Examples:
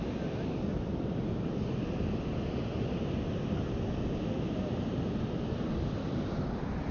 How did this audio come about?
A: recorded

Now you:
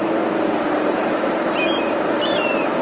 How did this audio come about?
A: recorded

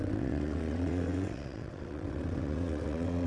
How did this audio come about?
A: remade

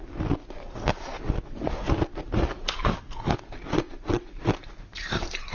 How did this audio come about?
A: recorded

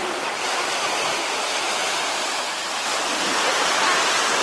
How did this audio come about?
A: recorded